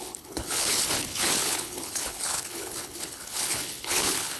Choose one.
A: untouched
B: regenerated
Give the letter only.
B